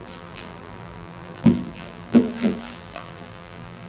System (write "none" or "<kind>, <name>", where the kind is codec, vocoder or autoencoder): vocoder, BigVGAN v2